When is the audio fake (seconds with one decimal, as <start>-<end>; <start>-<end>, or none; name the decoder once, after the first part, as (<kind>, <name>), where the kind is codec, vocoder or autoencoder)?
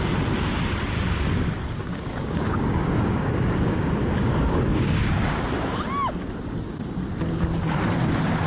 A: 1.8-5.5 (codec, DAC)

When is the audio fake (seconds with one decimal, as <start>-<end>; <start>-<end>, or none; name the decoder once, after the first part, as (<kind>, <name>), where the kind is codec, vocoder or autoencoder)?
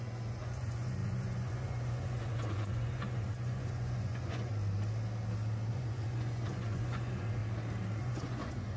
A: 0.0-4.5 (vocoder, Vocos); 5.7-7.4; 8.0-8.8